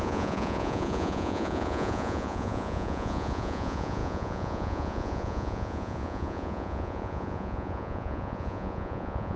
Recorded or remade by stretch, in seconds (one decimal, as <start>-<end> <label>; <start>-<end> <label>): 0.0-9.4 remade